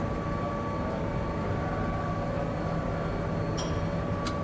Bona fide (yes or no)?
yes